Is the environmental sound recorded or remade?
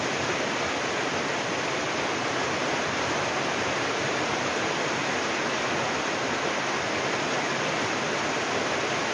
recorded